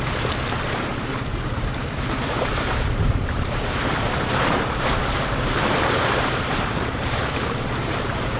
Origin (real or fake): fake